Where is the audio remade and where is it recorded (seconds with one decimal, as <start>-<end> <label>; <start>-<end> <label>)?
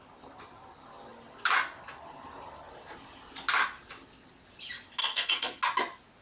0.0-5.0 recorded; 5.0-5.6 remade; 5.6-6.2 recorded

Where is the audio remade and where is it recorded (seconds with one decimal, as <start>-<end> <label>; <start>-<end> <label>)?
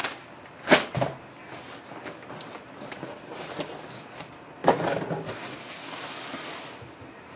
0.0-7.4 recorded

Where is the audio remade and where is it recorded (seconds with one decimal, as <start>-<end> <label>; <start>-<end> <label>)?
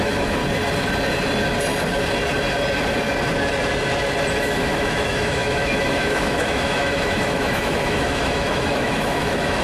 0.0-0.4 remade; 0.4-4.3 recorded; 4.3-9.6 remade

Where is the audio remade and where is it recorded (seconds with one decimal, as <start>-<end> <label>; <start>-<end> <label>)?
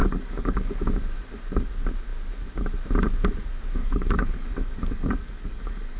0.0-0.9 remade; 0.9-3.8 recorded; 3.8-6.0 remade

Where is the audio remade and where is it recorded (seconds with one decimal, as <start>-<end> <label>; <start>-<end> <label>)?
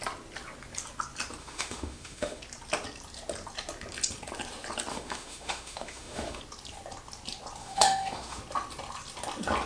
0.0-1.4 recorded; 1.4-2.4 remade; 2.4-4.9 recorded; 4.9-6.4 remade; 6.4-7.6 recorded; 7.6-8.4 remade; 8.4-9.7 recorded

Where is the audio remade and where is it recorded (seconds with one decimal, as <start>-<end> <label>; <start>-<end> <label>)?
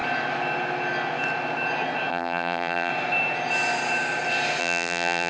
0.0-2.1 recorded; 2.1-2.9 remade; 2.9-4.6 recorded; 4.6-5.3 remade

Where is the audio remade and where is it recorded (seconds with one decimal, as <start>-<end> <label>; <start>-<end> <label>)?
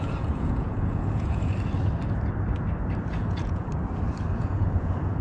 0.0-1.5 remade; 1.5-3.1 recorded; 3.1-3.7 remade; 3.7-4.4 recorded; 4.4-5.2 remade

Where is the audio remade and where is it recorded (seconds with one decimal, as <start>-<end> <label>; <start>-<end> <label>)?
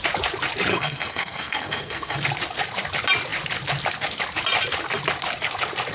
0.0-0.7 recorded; 0.7-2.2 remade; 2.2-5.9 recorded